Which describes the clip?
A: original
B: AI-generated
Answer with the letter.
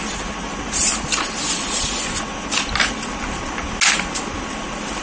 A